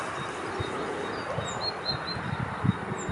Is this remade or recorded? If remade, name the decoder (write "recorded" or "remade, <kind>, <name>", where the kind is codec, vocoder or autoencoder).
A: recorded